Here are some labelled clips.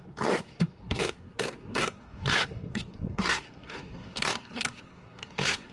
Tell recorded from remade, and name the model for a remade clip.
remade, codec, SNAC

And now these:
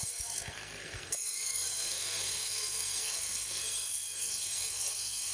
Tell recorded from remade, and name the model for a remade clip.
remade, codec, SNAC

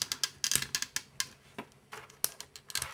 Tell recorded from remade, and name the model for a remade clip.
recorded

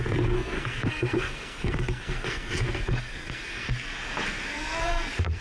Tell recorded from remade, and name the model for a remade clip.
remade, codec, SNAC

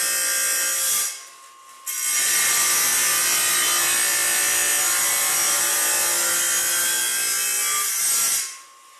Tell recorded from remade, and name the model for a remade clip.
recorded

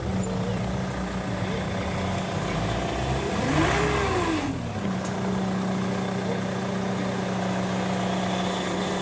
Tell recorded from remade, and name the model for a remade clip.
recorded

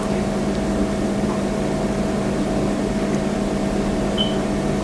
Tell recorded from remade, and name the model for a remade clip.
recorded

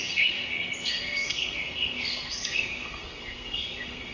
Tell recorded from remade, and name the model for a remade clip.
remade, codec, SNAC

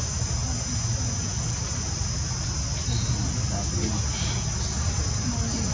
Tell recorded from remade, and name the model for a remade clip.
recorded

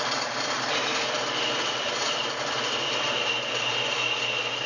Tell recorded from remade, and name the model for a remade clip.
recorded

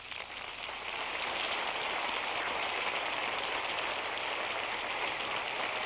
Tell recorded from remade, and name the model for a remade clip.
recorded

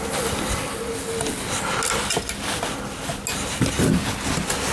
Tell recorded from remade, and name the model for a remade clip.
recorded